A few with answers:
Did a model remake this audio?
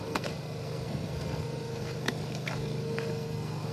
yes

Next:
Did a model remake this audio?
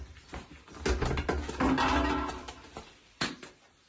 no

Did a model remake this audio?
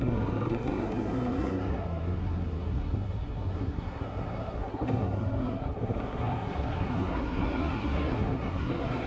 yes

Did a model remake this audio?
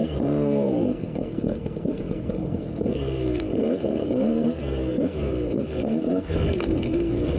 yes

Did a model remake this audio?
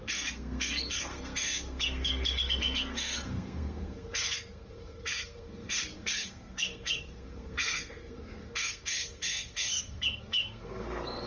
yes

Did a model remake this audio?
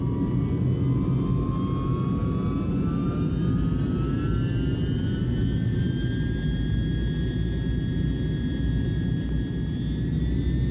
no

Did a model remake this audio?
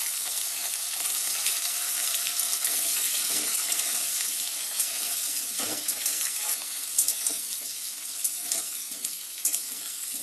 yes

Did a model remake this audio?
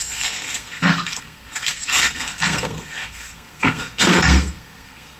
yes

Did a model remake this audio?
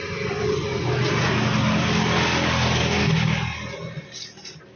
no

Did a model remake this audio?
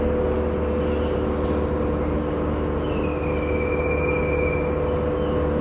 no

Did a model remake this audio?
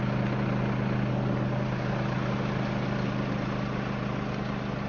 no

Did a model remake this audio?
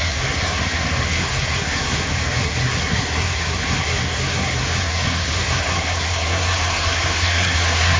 yes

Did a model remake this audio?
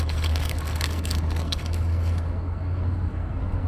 yes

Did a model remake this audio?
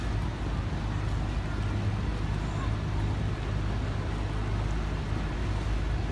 no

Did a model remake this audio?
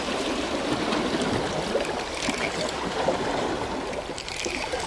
no